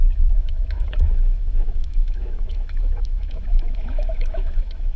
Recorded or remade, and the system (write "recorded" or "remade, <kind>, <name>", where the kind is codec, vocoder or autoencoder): remade, autoencoder, DAC-VAE